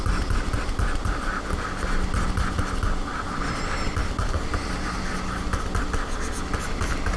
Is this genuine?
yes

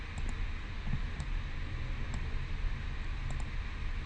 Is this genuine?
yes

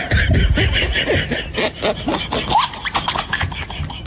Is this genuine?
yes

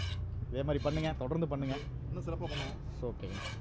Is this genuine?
yes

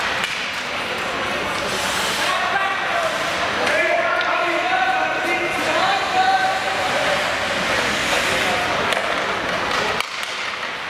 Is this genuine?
yes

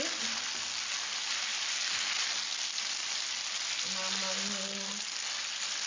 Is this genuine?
yes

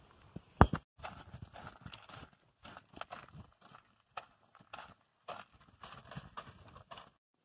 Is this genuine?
yes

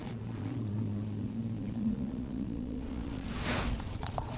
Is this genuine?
no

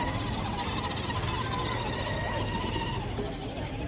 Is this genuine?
yes